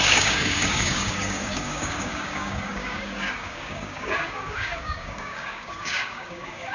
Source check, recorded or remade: remade